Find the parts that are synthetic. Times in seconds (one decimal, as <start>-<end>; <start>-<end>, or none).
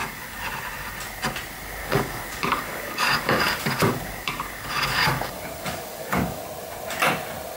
0.0-0.5; 1.8-6.4